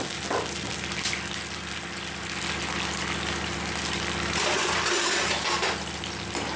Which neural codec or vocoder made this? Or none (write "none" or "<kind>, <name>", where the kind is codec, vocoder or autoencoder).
none